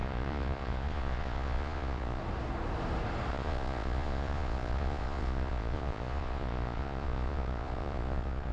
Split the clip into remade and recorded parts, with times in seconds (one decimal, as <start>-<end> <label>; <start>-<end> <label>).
0.0-2.2 remade; 2.2-3.3 recorded; 3.3-8.5 remade